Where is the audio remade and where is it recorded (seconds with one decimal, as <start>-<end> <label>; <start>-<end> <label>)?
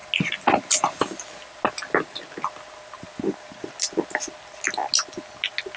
0.0-5.8 recorded